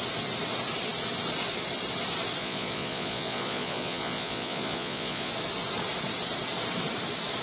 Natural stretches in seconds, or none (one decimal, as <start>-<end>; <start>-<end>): 0.0-2.4; 5.3-7.4